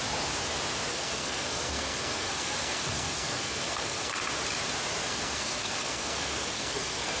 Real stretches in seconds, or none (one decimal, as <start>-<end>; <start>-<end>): 0.0-0.9; 4.2-5.0